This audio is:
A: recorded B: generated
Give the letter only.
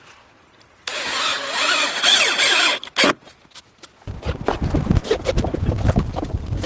A